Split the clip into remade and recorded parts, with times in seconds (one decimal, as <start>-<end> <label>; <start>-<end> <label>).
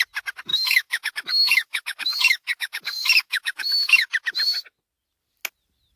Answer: 0.0-0.5 recorded; 0.5-4.1 remade; 4.1-6.0 recorded